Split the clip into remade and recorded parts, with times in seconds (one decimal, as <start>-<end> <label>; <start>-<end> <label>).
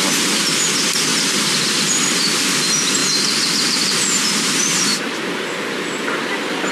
0.0-3.0 recorded; 3.0-5.2 remade; 5.2-6.7 recorded